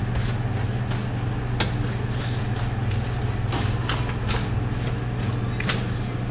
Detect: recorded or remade recorded